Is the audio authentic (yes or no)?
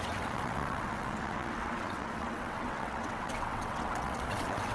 no